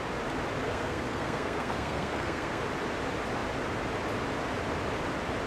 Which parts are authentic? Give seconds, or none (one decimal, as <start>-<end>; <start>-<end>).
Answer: 0.0-0.6; 2.6-5.5